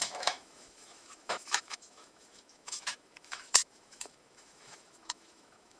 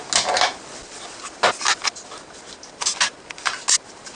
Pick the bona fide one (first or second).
second